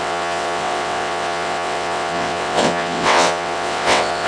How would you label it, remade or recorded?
remade